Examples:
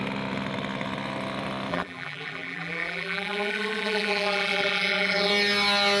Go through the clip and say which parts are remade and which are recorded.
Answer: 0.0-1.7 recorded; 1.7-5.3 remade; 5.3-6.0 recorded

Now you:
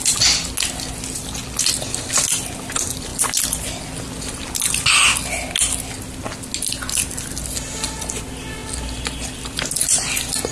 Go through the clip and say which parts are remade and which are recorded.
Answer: 0.0-10.5 recorded

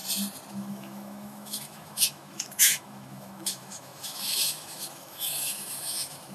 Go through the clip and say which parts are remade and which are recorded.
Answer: 0.0-0.5 recorded; 0.5-6.3 remade